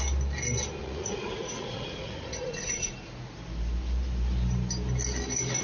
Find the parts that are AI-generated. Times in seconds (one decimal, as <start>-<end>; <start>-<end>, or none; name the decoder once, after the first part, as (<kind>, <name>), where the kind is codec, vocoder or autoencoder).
0.8-2.9 (vocoder, Vocos)